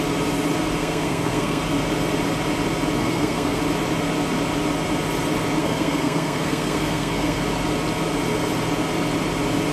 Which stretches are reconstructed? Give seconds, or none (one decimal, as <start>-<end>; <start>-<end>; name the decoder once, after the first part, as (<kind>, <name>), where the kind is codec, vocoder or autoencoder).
0.8-1.6 (codec, SNAC); 3.0-3.6; 5.6-7.4